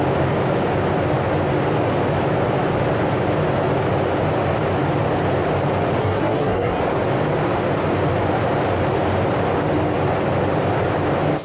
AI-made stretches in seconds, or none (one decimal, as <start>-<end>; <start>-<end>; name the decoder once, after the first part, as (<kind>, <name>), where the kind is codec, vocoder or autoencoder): 6.0-6.8 (codec, SNAC)